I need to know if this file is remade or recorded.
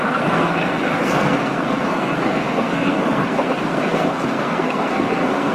remade